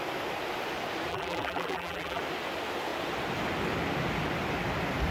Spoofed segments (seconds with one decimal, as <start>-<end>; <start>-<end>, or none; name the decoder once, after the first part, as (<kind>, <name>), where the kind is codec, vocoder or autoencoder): 1.1-2.2 (vocoder, BigVGAN v2)